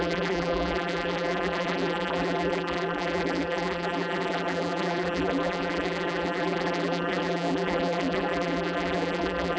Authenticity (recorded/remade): remade